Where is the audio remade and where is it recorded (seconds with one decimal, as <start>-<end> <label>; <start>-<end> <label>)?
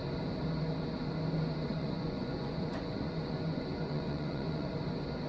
0.0-1.7 recorded; 1.7-4.7 remade; 4.7-5.3 recorded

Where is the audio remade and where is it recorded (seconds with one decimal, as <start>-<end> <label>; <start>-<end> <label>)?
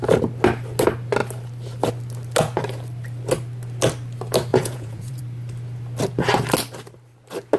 0.0-4.5 recorded; 4.5-5.2 remade; 5.2-7.6 recorded